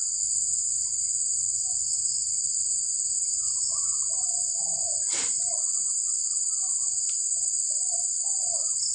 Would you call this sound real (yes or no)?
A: yes